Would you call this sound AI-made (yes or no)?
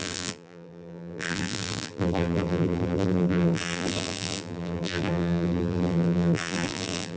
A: yes